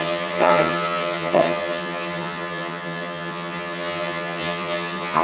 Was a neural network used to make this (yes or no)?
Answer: yes